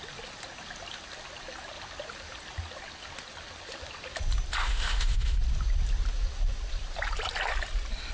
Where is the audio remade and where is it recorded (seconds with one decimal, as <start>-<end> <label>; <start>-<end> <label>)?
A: 0.0-4.6 recorded; 4.6-5.4 remade; 5.4-8.1 recorded